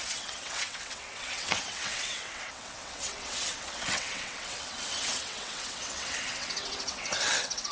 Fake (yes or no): yes